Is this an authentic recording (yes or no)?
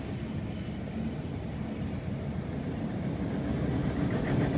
yes